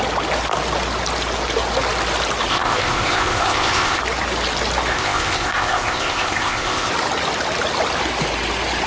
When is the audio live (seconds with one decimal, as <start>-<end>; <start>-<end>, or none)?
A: 0.0-2.5; 4.0-4.9; 6.9-8.9